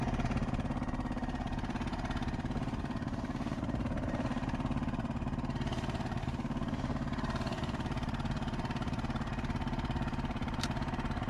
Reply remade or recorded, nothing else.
remade